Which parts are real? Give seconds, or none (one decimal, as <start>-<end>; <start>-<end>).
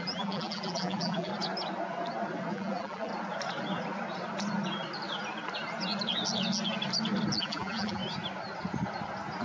1.3-2.5; 3.1-7.4; 8.0-9.4